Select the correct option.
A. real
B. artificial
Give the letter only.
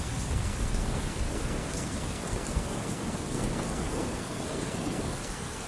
B